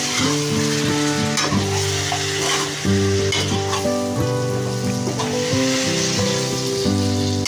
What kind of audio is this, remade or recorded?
recorded